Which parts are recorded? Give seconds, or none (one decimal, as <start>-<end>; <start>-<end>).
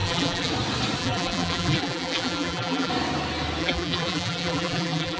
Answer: 0.5-1.0; 2.9-3.6